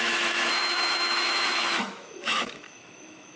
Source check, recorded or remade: remade